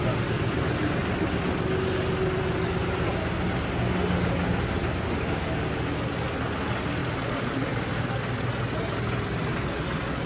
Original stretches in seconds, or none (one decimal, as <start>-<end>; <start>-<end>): 0.0-10.3